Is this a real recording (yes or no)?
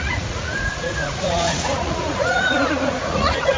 no